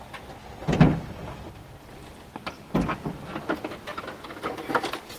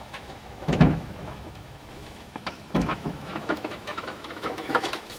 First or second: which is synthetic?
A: second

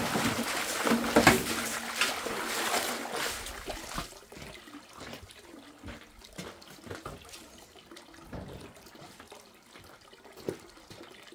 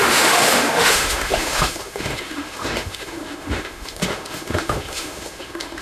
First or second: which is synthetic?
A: second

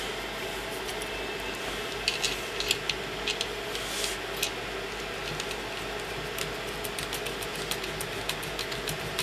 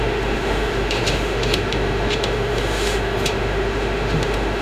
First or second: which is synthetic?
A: second